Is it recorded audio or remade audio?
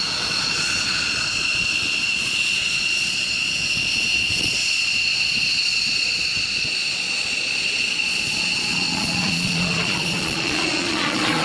remade